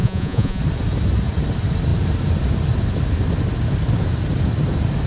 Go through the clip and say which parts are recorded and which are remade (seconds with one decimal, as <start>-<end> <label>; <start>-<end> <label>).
0.0-0.6 remade; 0.6-5.1 recorded